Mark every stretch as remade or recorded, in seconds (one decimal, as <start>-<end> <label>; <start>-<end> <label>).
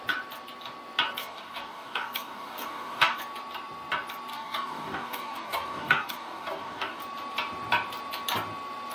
0.0-1.2 recorded; 1.2-3.2 remade; 3.2-4.3 recorded; 4.3-7.0 remade; 7.0-8.9 recorded